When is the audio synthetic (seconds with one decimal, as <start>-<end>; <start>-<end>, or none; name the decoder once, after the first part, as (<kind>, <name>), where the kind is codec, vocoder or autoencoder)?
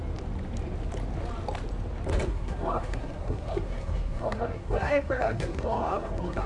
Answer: 2.3-6.5 (codec, SNAC)